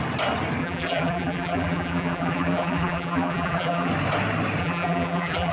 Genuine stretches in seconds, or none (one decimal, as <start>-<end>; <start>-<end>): 0.0-0.6; 3.9-4.6